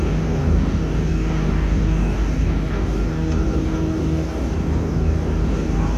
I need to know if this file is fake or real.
fake